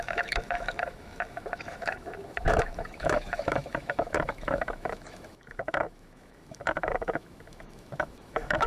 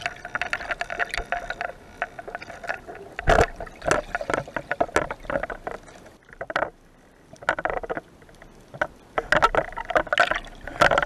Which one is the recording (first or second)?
second